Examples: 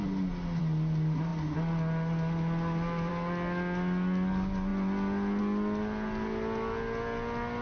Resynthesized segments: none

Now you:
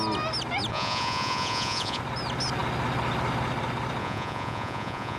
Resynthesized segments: 0.7-2.0 (vocoder, Vocos); 4.0-5.2